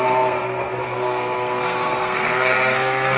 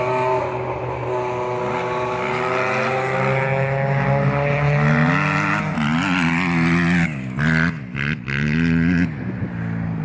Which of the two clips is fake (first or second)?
first